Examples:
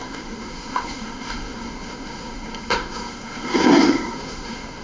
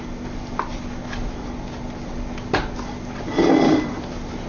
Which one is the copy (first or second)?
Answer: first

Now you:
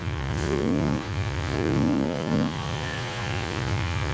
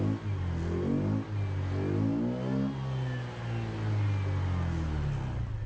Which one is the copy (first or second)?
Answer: first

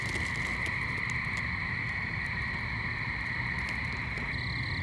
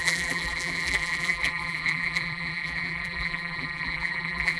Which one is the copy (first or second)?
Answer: second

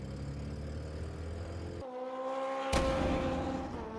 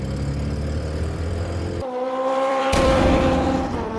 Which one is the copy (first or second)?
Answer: second